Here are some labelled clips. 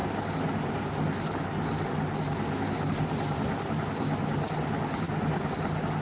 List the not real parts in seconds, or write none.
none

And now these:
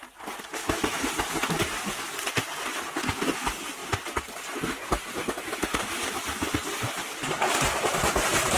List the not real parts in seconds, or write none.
0.6-1.1 (autoencoder, DAC-VAE)

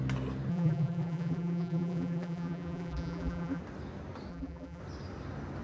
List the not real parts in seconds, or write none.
0.5-3.6 (vocoder, BigVGAN v2); 4.3-4.8